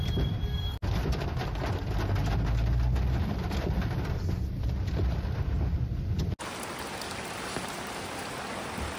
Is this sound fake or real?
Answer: real